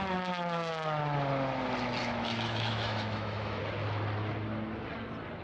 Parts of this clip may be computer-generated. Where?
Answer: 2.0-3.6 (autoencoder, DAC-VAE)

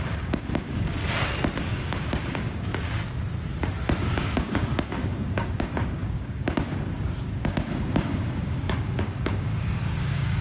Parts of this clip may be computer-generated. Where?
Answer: 0.0-1.0 (codec, DAC); 1.6-2.7; 4.0-10.4

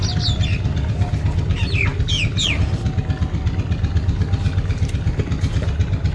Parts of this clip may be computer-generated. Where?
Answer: none